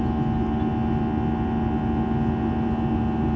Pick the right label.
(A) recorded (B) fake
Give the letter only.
A